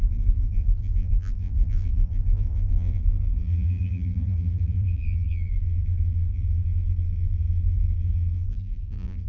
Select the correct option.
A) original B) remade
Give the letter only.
B